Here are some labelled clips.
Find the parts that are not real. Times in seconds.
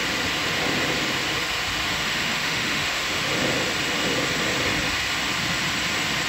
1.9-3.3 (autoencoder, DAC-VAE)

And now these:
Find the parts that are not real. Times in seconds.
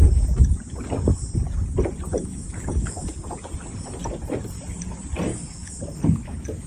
2.2-3.1 (autoencoder, DAC-VAE); 5.3-5.8